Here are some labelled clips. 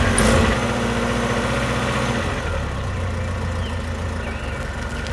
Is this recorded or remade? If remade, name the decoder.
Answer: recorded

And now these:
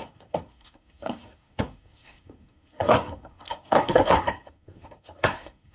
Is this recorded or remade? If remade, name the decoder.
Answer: remade, codec, SNAC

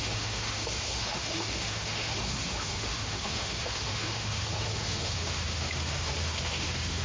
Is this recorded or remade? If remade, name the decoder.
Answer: remade, autoencoder, DAC-VAE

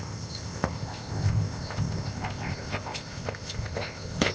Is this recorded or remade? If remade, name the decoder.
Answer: remade, codec, ZipCodec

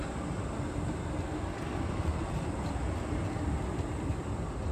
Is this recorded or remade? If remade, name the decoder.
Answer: recorded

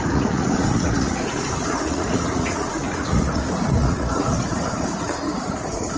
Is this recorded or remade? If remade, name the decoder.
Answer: remade, vocoder, Vocos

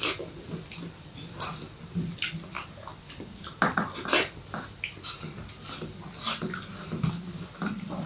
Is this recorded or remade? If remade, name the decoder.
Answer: recorded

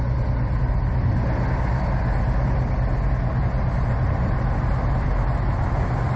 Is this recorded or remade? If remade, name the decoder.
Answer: recorded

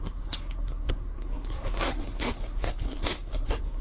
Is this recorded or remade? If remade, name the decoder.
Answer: remade, codec, SNAC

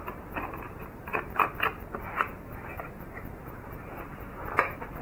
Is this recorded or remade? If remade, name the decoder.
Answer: recorded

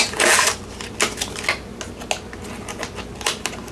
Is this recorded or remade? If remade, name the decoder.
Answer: recorded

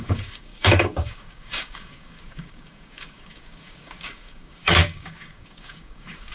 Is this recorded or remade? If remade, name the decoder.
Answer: remade, codec, DAC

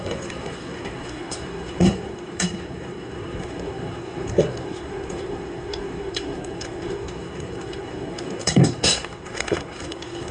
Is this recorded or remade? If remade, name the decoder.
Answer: remade, codec, SNAC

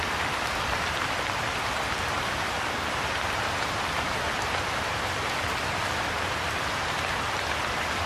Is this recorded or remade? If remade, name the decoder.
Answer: recorded